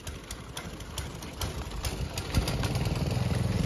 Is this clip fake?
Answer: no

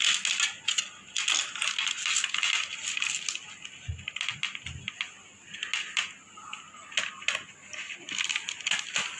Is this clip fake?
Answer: no